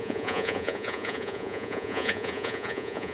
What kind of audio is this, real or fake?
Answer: fake